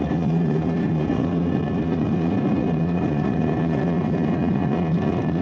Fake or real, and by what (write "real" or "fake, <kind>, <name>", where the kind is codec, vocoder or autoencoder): fake, vocoder, Vocos